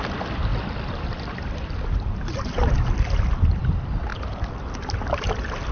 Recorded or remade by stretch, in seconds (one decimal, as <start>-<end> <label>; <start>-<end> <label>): 0.0-5.7 recorded